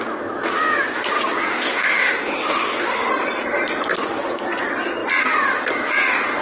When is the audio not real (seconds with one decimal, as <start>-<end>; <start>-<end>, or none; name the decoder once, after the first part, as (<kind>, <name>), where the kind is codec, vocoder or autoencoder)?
1.5-3.1 (autoencoder, DAC-VAE)